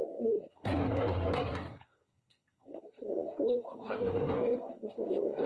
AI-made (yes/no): yes